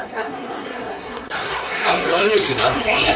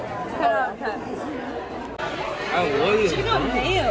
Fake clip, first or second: first